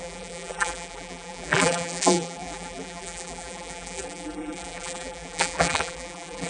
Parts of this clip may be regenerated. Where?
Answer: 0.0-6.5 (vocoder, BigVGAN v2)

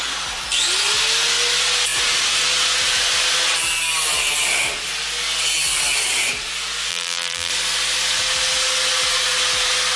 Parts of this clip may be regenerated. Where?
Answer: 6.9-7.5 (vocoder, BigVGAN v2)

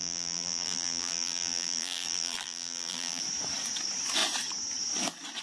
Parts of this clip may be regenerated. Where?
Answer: 0.0-3.2 (vocoder, BigVGAN v2)

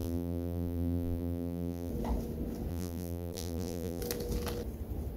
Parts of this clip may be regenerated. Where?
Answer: 0.0-1.9 (vocoder, BigVGAN v2); 2.7-4.0